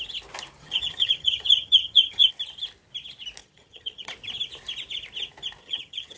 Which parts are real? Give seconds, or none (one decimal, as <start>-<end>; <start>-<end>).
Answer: 0.0-0.6; 2.3-3.4; 4.1-5.6